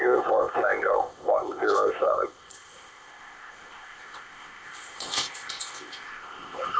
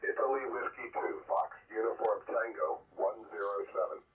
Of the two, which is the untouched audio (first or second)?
second